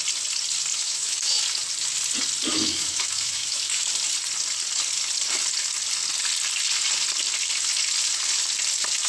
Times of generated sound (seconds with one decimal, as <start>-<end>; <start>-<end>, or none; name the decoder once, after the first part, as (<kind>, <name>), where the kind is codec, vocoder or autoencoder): 0.7-1.4 (autoencoder, DAC-VAE); 2.5-3.9